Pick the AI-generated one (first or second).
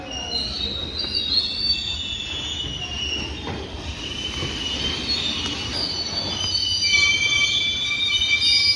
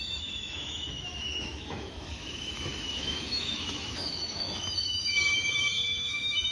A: second